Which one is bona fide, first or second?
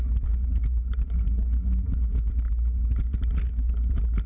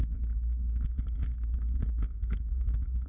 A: first